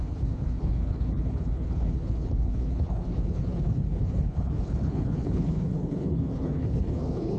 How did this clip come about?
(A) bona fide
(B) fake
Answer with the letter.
B